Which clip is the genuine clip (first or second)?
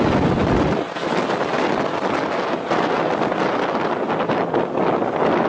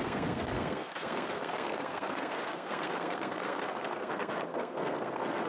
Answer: first